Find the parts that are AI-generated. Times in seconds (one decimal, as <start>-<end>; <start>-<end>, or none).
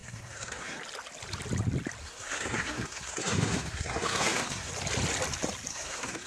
0.0-0.8; 2.0-4.7; 5.7-6.3